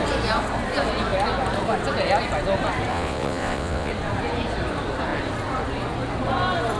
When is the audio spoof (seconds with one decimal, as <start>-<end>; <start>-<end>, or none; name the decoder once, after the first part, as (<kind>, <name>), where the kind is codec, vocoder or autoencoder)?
2.9-3.9 (vocoder, WaveNeXt)